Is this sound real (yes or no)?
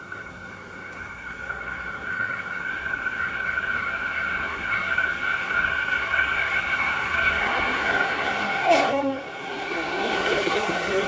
no